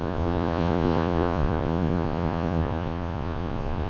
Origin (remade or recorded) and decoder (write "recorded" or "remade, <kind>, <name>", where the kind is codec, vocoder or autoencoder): remade, vocoder, Vocos